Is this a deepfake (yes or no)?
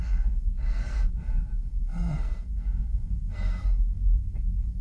yes